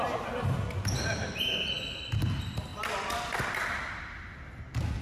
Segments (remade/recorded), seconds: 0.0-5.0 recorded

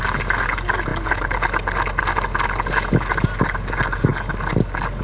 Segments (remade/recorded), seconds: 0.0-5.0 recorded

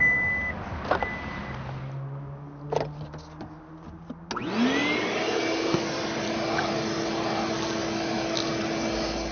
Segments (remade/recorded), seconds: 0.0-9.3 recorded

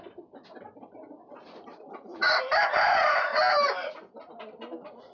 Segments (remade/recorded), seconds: 0.0-2.1 recorded; 2.1-3.9 remade; 3.9-5.1 recorded

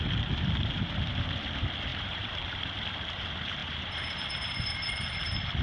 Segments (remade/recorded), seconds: 0.0-1.9 recorded; 1.9-2.8 remade; 2.8-3.6 recorded; 3.6-4.7 remade; 4.7-5.6 recorded

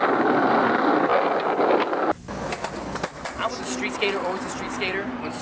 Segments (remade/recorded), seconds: 0.0-5.4 recorded